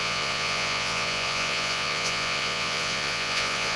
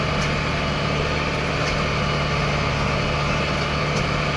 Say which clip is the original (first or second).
second